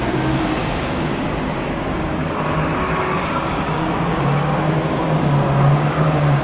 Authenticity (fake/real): fake